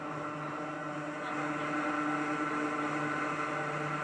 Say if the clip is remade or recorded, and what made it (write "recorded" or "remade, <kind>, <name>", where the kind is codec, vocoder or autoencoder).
recorded